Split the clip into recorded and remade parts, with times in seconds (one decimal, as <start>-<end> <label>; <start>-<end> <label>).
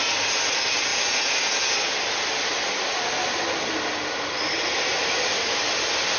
0.0-6.2 recorded